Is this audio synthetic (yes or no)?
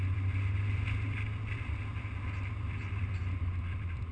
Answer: yes